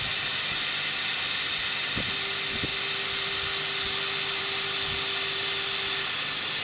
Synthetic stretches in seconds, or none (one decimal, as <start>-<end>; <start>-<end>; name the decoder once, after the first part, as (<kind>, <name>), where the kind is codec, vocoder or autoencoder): none